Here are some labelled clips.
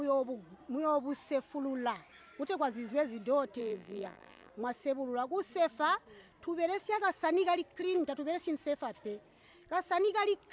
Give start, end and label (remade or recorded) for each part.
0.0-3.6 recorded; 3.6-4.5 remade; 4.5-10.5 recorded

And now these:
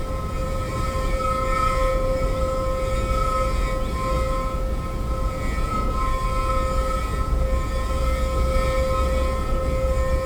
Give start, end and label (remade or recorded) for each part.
0.0-0.4 recorded; 0.4-1.2 remade; 1.2-10.3 recorded

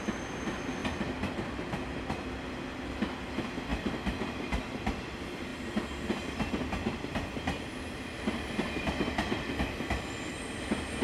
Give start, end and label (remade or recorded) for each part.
0.0-3.7 recorded; 3.7-4.9 remade; 4.9-11.0 recorded

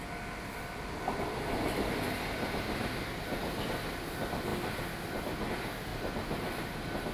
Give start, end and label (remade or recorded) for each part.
0.0-5.9 recorded; 5.9-7.1 remade